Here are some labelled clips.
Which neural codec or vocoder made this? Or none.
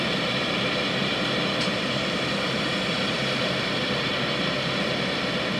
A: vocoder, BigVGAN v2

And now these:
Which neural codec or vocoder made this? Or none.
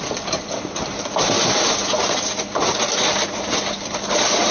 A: none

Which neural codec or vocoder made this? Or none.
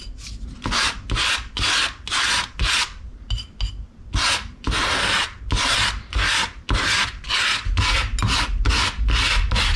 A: none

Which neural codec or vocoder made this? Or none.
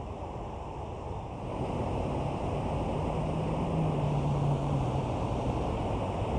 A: vocoder, BigVGAN v2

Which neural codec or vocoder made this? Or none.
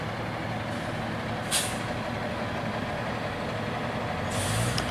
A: none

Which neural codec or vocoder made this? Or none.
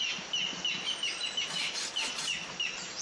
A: none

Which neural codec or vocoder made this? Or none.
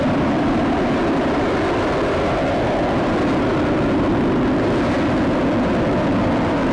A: none